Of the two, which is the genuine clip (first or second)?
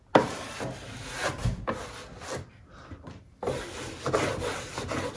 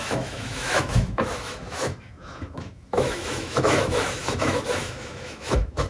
first